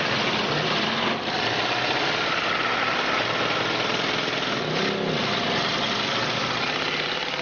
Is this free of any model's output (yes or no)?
yes